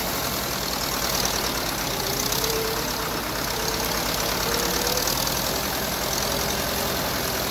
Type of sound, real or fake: real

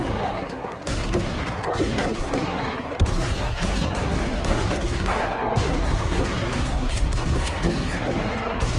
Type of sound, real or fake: fake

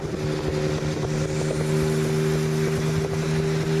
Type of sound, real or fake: real